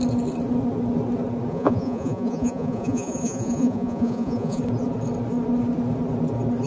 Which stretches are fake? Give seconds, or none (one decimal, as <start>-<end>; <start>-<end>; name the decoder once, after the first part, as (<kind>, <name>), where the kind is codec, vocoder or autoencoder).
1.5-4.6 (vocoder, Vocos)